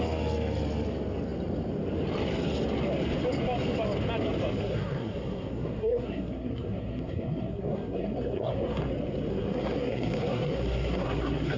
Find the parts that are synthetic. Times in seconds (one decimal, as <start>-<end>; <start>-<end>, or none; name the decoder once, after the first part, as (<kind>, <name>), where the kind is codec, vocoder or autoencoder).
4.6-8.9 (codec, SNAC); 9.3-11.6